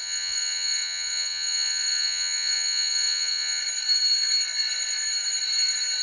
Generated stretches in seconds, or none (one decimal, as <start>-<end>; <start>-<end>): 0.0-3.6